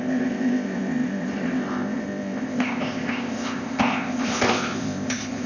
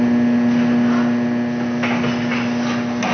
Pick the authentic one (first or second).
second